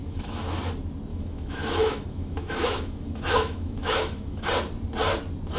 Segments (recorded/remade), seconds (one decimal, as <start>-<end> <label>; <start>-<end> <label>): 0.0-0.6 remade; 0.6-1.1 recorded; 1.1-4.5 remade; 4.5-5.6 recorded